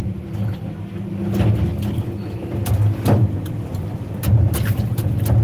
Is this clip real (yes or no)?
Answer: yes